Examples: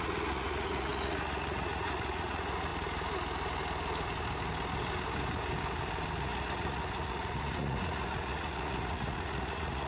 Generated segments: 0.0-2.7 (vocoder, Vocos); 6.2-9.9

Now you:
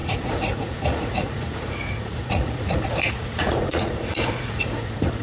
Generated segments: 0.0-5.2 (vocoder, Vocos)

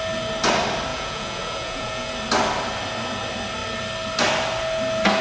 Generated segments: 0.9-2.1 (vocoder, Vocos)